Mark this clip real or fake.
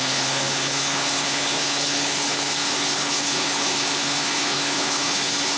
fake